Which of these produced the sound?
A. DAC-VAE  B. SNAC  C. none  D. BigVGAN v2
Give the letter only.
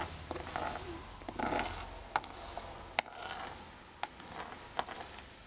C